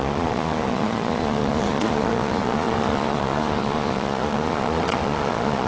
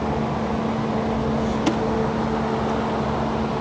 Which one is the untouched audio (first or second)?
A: second